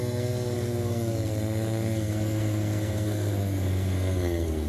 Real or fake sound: fake